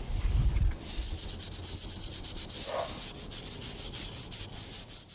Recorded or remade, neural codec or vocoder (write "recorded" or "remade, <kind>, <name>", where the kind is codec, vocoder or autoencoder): recorded